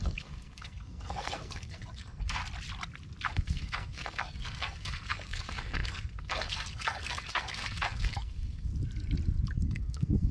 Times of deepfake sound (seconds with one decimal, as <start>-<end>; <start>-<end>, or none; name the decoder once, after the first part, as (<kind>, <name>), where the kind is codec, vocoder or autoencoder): 0.0-2.4 (codec, SNAC); 3.3-8.7; 9.5-10.3